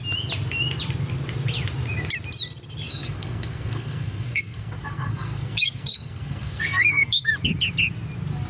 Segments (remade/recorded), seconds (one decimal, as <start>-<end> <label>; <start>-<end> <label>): 0.0-2.9 recorded; 2.9-7.3 remade; 7.3-8.5 recorded